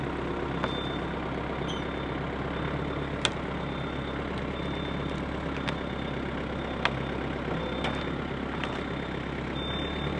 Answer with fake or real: real